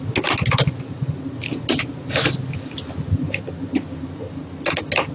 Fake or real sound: real